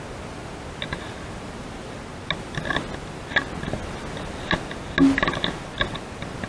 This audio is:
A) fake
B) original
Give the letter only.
B